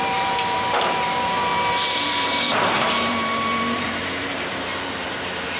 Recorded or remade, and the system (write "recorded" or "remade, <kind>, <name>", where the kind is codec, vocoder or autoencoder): remade, vocoder, BigVGAN v2